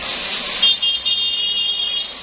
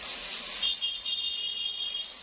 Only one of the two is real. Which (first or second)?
first